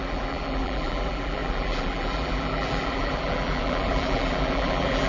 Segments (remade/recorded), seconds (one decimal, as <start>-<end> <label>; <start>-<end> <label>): 0.0-5.1 remade